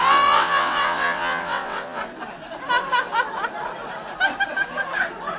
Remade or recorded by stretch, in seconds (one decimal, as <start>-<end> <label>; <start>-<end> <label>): 0.0-2.0 remade; 2.0-5.4 recorded